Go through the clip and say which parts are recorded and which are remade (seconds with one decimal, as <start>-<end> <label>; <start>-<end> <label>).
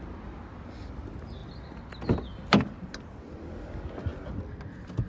0.0-2.3 recorded; 2.3-2.9 remade; 2.9-5.1 recorded